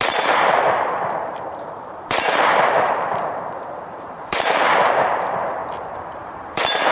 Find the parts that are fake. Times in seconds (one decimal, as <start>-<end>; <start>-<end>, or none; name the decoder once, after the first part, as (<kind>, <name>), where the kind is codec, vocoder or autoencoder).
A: 0.0-5.6 (vocoder, BigVGAN v2); 6.2-6.9